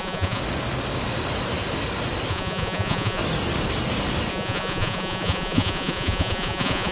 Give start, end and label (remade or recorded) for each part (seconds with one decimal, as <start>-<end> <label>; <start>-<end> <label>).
0.0-0.4 remade; 0.4-2.3 recorded; 2.3-3.2 remade; 3.2-4.3 recorded; 4.3-6.9 remade